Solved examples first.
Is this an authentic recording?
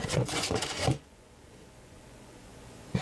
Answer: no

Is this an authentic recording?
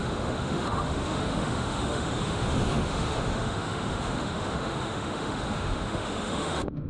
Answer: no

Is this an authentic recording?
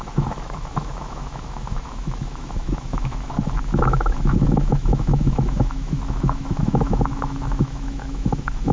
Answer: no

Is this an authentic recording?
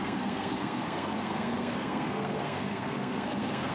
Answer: no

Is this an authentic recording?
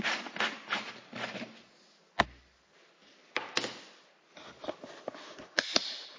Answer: yes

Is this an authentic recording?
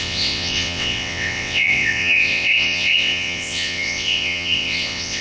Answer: no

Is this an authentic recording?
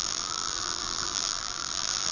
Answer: no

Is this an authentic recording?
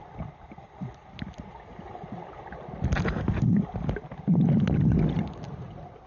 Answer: yes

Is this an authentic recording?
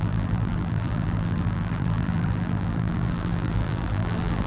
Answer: no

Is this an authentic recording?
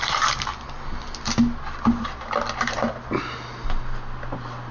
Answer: yes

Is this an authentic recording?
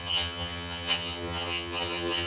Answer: no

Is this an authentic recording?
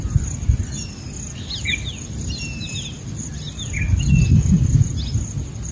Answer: yes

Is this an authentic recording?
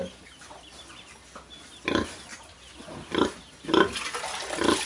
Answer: yes